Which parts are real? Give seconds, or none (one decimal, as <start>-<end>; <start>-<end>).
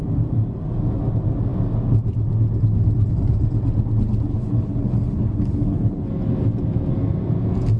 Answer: 0.0-4.3; 6.1-7.8